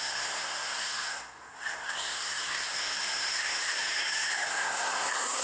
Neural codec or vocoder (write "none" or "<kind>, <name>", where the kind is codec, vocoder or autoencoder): codec, SNAC